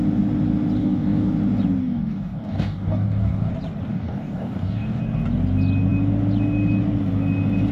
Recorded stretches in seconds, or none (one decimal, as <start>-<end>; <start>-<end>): 0.0-0.8; 1.3-1.8; 3.5-3.9; 5.0-7.7